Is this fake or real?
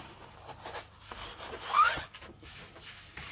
real